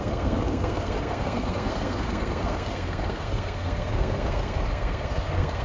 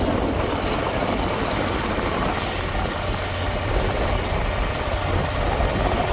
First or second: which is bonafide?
second